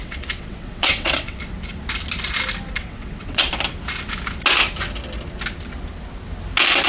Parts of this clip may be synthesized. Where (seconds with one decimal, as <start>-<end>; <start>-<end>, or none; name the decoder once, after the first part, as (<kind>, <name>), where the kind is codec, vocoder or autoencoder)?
0.0-1.4 (vocoder, WaveNeXt); 2.8-3.5